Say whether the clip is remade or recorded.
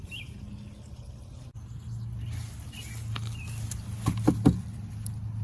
recorded